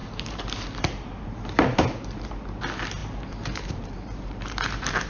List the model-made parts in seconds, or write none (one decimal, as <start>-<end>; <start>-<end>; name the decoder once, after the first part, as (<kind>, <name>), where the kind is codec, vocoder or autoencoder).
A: 0.0-2.3 (vocoder, BigVGAN v2); 3.0-5.1

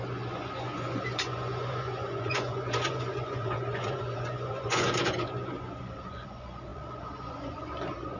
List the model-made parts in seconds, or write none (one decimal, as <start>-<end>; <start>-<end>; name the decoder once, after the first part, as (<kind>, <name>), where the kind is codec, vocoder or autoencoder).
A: 0.0-8.2 (vocoder, Vocos)

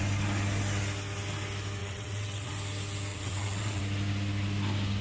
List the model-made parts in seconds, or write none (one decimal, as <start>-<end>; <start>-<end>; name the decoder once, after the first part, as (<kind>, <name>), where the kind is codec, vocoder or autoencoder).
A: 1.8-2.5 (vocoder, WaveNeXt); 3.1-3.8

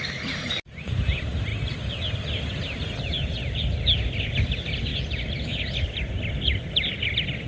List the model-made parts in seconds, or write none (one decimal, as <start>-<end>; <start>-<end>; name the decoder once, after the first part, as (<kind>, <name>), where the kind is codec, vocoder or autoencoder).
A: none